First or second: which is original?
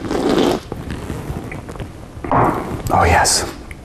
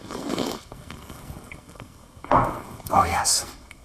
first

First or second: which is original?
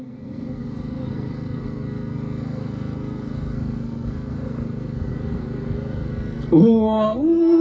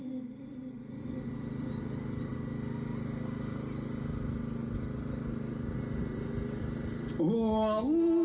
second